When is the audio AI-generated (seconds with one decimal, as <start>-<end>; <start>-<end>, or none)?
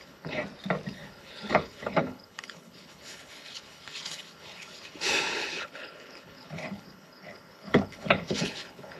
0.0-0.4; 0.9-9.0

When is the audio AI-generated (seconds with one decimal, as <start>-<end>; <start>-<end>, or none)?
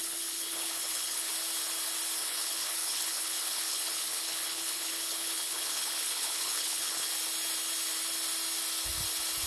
0.0-1.3; 2.2-7.1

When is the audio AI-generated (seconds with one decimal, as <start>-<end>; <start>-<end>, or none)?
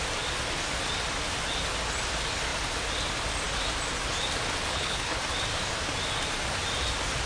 4.7-5.2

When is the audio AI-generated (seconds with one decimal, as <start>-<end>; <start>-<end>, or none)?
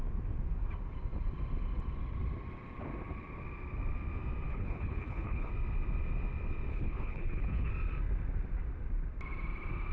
4.5-5.5; 6.7-7.7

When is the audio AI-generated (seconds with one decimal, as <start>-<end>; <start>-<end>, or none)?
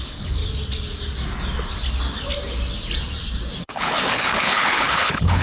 0.0-0.4; 3.6-5.4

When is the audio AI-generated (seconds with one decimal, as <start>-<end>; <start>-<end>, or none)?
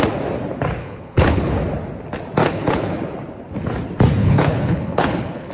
0.8-1.5; 2.4-3.0; 4.2-5.5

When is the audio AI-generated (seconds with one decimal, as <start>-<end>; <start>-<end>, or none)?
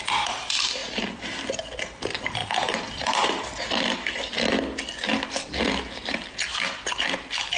none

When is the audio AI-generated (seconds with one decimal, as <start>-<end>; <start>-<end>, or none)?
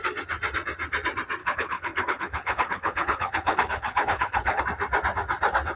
1.4-4.6